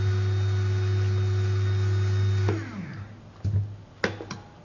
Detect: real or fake real